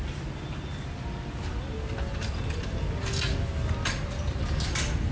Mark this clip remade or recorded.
recorded